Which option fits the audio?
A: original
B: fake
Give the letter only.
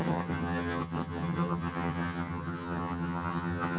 B